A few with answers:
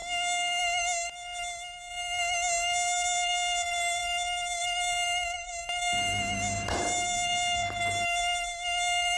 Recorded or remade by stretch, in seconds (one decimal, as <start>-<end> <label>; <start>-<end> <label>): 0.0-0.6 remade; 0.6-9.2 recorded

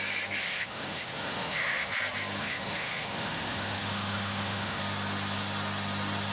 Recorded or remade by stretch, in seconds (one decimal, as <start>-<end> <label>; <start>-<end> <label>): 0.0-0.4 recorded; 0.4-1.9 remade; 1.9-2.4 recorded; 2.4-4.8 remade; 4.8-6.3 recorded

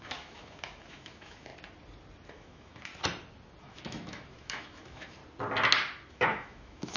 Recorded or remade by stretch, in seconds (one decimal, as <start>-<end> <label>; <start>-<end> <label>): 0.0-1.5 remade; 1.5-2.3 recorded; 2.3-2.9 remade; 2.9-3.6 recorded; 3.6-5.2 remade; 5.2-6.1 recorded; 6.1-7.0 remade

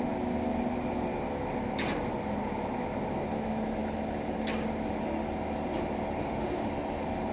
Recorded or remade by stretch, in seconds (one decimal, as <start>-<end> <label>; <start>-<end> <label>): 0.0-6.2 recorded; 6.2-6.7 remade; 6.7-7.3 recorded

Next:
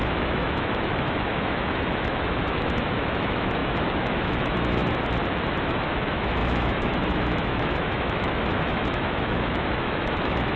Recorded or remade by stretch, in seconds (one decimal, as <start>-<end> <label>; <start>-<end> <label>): 0.0-4.8 remade; 4.8-5.6 recorded; 5.6-10.6 remade

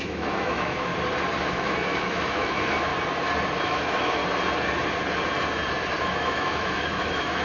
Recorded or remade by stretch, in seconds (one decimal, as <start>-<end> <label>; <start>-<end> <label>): 0.0-0.9 remade; 0.9-1.4 recorded; 1.4-2.9 remade; 2.9-3.6 recorded; 3.6-4.2 remade; 4.2-6.0 recorded; 6.0-7.4 remade

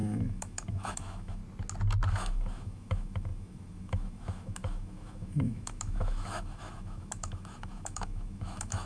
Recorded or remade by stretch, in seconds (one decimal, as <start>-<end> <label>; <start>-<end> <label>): 0.0-1.4 remade; 1.4-2.1 recorded; 2.1-8.9 remade